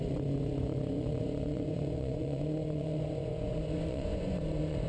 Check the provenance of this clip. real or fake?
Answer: fake